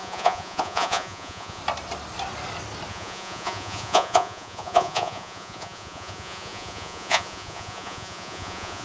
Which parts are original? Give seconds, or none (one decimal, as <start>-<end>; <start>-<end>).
1.6-2.9